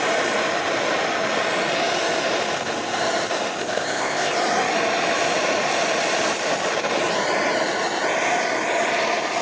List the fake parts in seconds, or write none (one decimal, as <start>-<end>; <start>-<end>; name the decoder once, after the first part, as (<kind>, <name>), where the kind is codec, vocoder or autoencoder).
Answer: 3.6-4.3 (codec, ZipCodec)